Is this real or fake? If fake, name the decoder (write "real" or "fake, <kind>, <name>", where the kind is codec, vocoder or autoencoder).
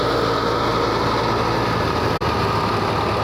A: real